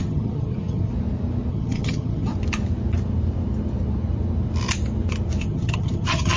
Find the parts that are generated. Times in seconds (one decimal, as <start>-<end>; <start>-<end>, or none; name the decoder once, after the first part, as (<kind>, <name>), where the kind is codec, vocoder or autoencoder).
0.0-0.9 (vocoder, HiFi-GAN); 1.5-2.3; 5.4-6.4